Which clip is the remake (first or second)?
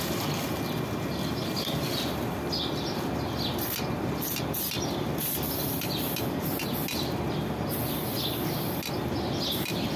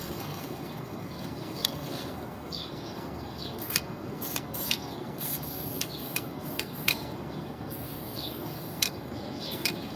second